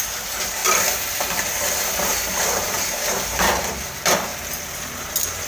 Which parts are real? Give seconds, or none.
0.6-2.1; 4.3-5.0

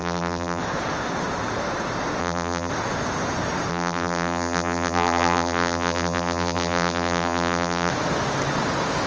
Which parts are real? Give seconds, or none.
0.6-2.2; 2.7-3.7; 7.9-9.1

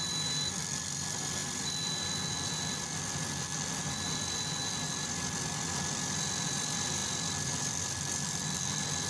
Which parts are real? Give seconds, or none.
none

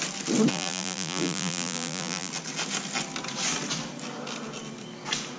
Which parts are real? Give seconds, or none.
0.0-0.5; 2.3-5.4

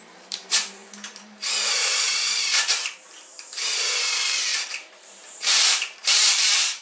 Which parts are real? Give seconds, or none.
none

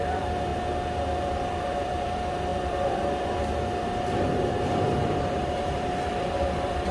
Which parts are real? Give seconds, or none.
0.5-1.6

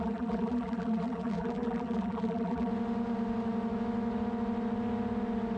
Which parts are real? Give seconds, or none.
2.7-5.6

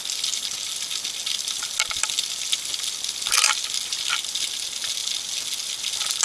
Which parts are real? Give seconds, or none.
0.0-6.2